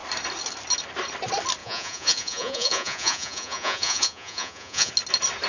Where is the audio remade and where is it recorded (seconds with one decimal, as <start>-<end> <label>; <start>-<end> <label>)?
0.0-1.6 recorded; 1.6-4.9 remade; 4.9-5.5 recorded